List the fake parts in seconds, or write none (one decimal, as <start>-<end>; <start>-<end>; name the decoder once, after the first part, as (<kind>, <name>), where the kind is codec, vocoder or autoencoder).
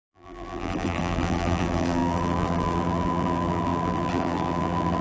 0.0-5.0 (vocoder, BigVGAN v2)